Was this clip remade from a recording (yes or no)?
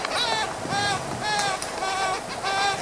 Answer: no